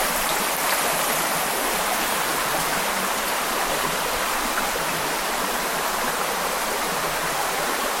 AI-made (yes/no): yes